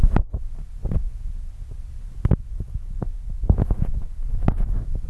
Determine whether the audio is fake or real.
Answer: real